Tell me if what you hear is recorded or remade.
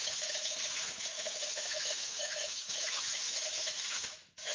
remade